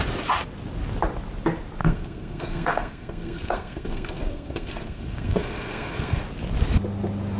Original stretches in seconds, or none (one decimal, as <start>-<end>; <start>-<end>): 0.0-1.8; 6.2-7.4